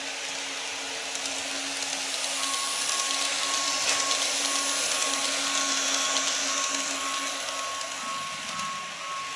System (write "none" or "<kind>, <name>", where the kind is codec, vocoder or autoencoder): none